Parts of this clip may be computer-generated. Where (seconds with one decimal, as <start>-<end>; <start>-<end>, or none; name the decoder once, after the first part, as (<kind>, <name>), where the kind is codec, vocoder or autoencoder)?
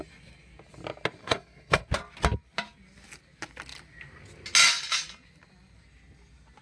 1.2-1.9 (codec, SNAC)